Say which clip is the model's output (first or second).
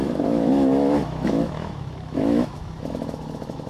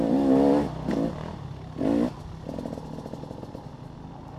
first